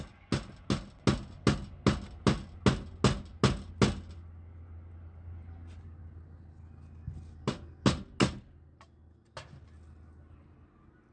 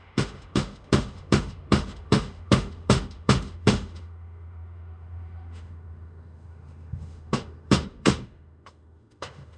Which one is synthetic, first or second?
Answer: second